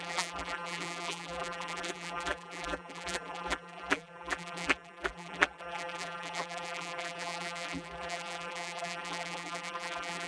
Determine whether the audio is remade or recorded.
remade